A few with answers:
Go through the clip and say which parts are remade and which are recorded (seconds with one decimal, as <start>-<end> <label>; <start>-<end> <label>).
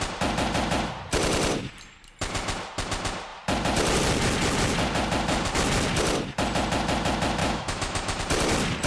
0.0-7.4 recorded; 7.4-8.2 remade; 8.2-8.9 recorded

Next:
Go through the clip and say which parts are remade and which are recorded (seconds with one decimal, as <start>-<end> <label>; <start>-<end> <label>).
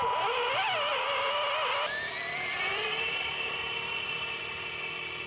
0.0-0.9 recorded; 0.9-1.4 remade; 1.4-2.7 recorded; 2.7-4.4 remade; 4.4-5.3 recorded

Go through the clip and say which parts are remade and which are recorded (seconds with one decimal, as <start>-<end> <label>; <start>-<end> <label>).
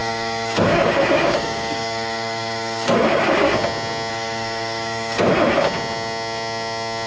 0.0-3.5 remade; 3.5-4.1 recorded; 4.1-5.3 remade; 5.3-7.1 recorded